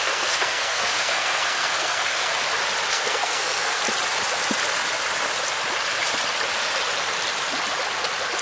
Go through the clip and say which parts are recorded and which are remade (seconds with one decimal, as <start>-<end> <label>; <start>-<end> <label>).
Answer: 0.0-2.4 remade; 2.4-2.9 recorded; 2.9-3.8 remade; 3.8-8.4 recorded